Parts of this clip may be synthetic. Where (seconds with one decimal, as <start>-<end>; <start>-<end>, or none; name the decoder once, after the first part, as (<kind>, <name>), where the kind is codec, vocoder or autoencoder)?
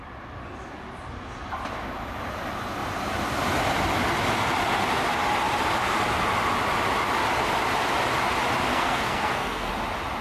8.7-9.7 (codec, SNAC)